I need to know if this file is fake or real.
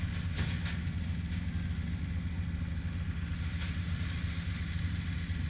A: real